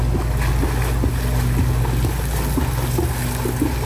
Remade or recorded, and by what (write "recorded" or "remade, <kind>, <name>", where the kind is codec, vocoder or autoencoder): recorded